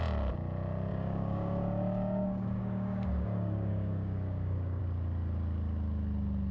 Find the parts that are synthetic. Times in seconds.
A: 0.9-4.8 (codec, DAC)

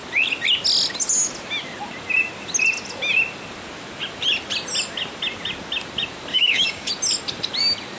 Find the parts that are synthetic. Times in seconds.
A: 6.3-6.9 (codec, DAC)

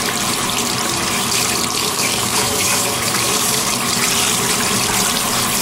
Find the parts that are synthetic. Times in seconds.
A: 1.8-3.7 (codec, DAC)

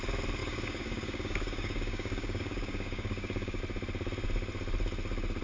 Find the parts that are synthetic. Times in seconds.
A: 0.4-3.6 (codec, DAC)